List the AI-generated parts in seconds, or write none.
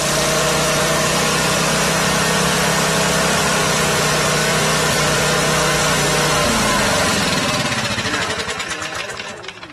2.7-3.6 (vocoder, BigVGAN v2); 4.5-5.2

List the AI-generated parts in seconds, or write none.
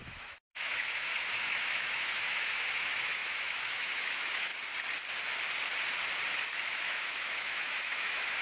0.0-4.5 (autoencoder, DAC-VAE); 6.7-8.4